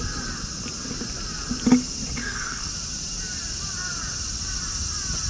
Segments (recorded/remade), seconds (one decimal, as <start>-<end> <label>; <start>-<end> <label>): 0.0-2.2 recorded; 2.2-2.7 remade; 2.7-5.3 recorded

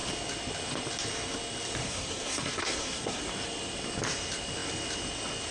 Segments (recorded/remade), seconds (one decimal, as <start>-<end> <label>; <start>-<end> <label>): 0.0-1.8 recorded; 1.8-3.2 remade; 3.2-5.5 recorded

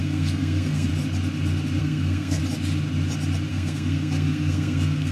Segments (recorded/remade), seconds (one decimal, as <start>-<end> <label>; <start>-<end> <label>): 0.0-0.9 remade; 0.9-1.8 recorded; 1.8-2.4 remade; 2.4-3.5 recorded; 3.5-5.1 remade

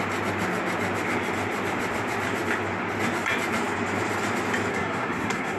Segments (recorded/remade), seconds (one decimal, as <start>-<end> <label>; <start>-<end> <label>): 0.0-4.7 recorded; 4.7-5.6 remade

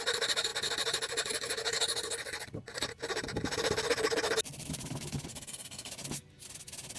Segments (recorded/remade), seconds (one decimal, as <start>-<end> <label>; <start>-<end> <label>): 0.0-5.3 recorded; 5.3-5.9 remade; 5.9-7.0 recorded

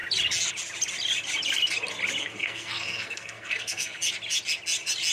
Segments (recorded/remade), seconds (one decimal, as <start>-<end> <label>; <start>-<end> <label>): 0.0-2.2 recorded; 2.2-4.0 remade; 4.0-5.1 recorded